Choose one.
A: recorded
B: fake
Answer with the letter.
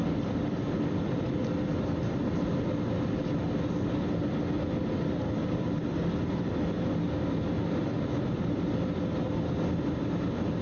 A